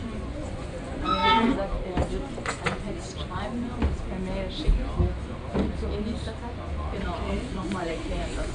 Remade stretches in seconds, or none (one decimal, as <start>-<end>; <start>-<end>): 0.0-1.2; 2.3-3.7; 6.4-8.5